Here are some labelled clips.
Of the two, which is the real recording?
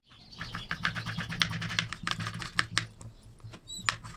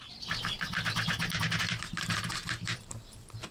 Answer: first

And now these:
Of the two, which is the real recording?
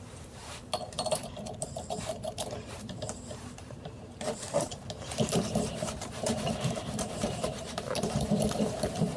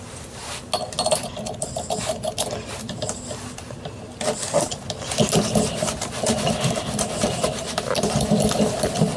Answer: second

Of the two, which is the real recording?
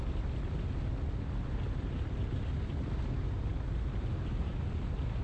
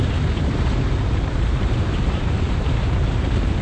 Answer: first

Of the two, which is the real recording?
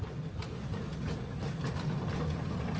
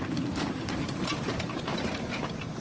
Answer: first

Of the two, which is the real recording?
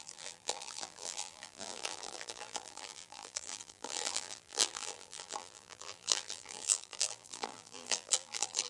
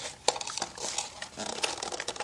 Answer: second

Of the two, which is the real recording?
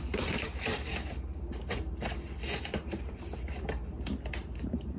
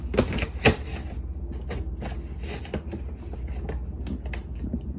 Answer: second